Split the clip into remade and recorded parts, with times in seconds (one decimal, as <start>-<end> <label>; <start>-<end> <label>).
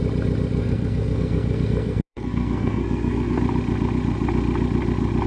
0.0-0.6 recorded; 0.6-3.4 remade; 3.4-5.3 recorded